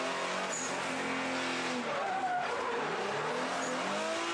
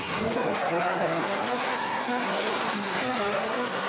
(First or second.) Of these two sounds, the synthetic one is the second